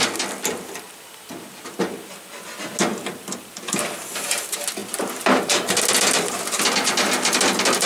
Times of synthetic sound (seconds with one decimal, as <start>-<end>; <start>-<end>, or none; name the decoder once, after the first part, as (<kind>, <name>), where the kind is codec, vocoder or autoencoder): 2.9-3.6 (vocoder, BigVGAN v2)